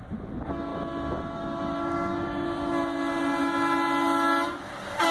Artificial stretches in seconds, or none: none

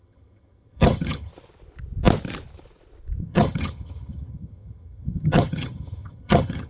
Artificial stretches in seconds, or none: 0.0-1.3 (vocoder, HiFi-GAN); 3.2-6.7

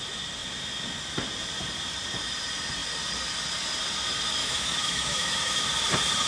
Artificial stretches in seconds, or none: 4.4-5.6 (autoencoder, DAC-VAE)

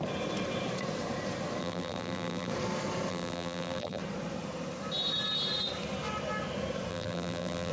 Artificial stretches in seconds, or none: 1.6-2.5 (vocoder, BigVGAN v2); 3.1-4.0; 6.9-7.7

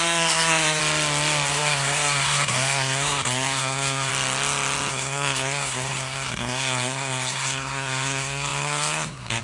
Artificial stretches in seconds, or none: 0.0-0.8 (codec, SNAC); 1.5-4.1; 4.9-9.4

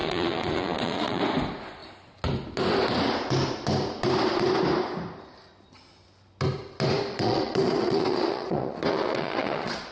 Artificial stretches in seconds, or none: 0.0-1.2 (vocoder, Vocos); 7.1-9.9